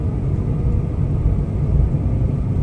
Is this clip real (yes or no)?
yes